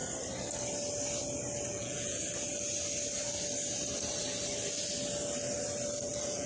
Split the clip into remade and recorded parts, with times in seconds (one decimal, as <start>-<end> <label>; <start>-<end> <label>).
0.0-1.7 recorded; 1.7-2.2 remade; 2.2-6.1 recorded; 6.1-6.5 remade